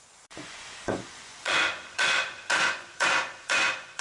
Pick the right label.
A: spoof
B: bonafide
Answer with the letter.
A